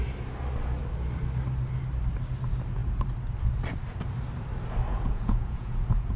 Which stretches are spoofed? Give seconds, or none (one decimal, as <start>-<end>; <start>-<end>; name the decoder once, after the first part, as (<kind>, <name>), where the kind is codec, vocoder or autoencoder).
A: 4.9-6.2 (vocoder, Vocos)